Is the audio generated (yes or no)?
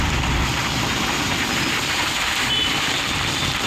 no